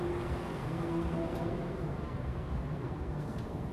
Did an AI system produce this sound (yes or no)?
yes